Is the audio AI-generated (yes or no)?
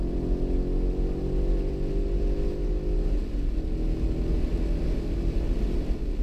no